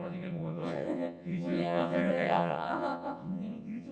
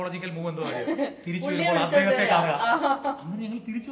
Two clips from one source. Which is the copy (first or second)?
first